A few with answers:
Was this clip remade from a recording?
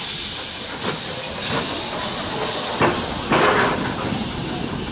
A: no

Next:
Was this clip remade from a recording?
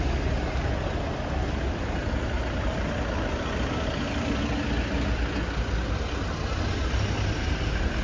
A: no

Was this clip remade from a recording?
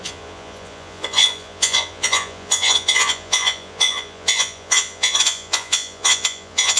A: yes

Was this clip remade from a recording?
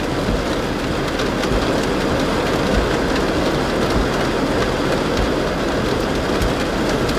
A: no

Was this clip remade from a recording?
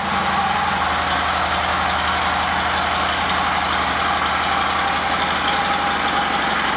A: no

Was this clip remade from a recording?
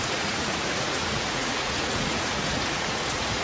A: yes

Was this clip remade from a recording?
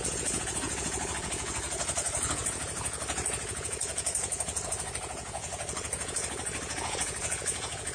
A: yes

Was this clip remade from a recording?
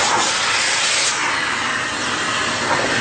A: no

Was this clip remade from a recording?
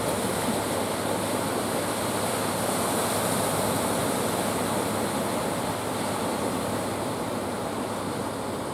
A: no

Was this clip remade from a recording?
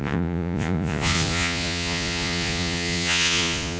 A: yes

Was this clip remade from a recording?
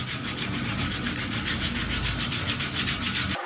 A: no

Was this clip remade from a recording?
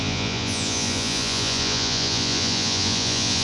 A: yes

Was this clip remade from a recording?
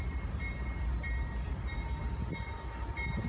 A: no